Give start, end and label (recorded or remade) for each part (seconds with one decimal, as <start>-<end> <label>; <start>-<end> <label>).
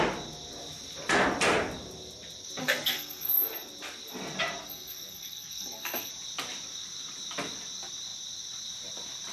0.0-2.6 recorded; 2.6-3.3 remade; 3.3-4.6 recorded; 4.6-6.1 remade; 6.1-9.3 recorded